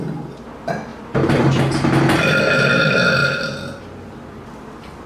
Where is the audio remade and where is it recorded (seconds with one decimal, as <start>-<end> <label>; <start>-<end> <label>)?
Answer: 0.0-5.1 recorded